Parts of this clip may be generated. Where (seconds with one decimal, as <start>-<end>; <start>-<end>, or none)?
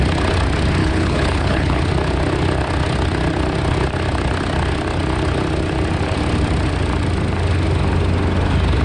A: 0.8-1.8